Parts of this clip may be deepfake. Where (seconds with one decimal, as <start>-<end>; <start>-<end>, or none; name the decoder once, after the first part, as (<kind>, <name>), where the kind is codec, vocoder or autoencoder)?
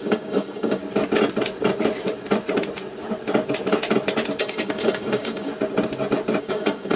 0.0-0.8 (codec, DAC); 4.4-5.5; 6.4-7.0